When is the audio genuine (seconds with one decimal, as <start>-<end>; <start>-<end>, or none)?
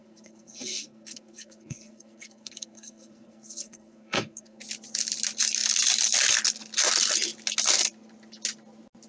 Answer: 4.6-9.1